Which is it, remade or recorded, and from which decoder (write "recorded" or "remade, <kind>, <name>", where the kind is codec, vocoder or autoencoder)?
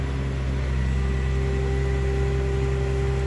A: recorded